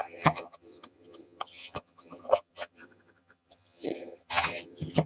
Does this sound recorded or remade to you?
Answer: remade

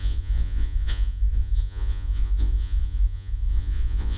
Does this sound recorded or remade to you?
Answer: remade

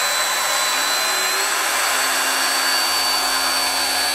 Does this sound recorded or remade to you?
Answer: recorded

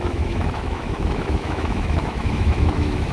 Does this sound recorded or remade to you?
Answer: remade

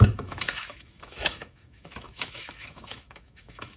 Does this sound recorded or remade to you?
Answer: remade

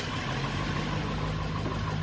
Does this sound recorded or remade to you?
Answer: recorded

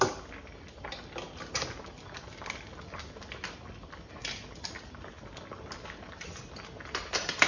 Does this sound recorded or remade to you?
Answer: recorded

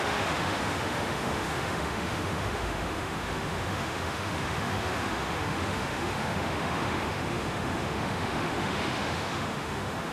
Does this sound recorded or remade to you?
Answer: remade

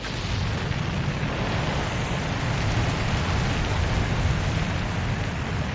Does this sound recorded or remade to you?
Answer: recorded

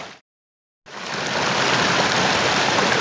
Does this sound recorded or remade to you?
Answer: recorded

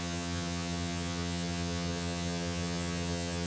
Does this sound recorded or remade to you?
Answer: remade